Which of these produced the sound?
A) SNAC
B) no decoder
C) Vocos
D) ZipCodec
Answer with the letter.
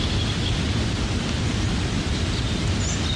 B